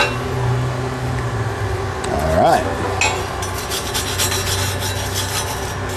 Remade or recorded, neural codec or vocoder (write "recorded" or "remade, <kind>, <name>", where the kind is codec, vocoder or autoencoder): recorded